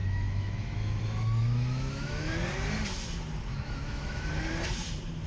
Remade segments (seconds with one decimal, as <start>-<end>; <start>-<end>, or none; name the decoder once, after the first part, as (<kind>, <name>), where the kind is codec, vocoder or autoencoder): 0.0-1.0 (autoencoder, DAC-VAE); 1.4-2.3; 3.5-4.3